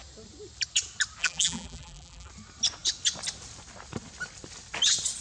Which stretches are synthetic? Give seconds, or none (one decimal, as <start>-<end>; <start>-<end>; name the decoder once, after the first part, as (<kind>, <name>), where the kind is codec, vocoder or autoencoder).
1.2-2.3 (vocoder, BigVGAN v2)